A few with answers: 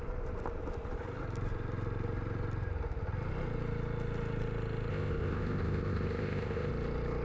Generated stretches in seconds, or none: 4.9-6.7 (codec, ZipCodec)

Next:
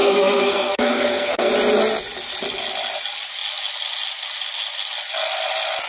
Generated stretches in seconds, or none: 0.0-1.5 (codec, SNAC)